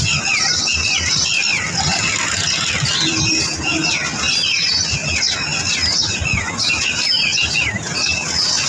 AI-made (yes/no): no